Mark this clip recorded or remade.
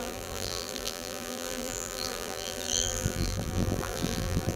remade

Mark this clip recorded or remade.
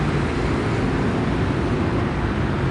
recorded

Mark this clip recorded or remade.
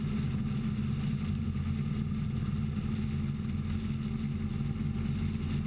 recorded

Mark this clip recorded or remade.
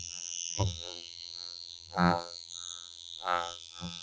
remade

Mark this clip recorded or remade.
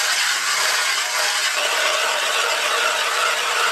remade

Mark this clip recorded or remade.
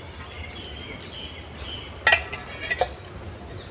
recorded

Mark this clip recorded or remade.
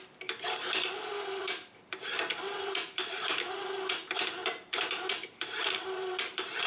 remade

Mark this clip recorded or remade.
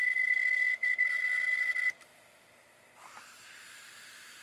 remade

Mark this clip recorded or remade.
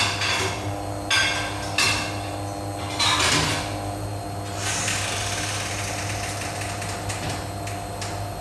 recorded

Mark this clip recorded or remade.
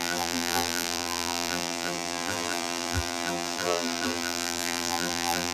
remade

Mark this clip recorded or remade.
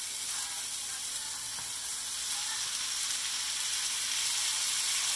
recorded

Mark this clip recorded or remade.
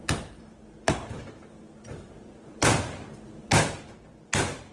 remade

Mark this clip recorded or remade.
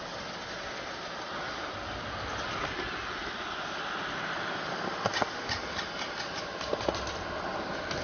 recorded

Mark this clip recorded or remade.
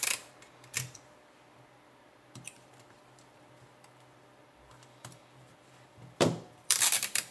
remade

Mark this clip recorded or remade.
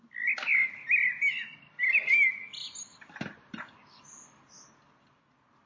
recorded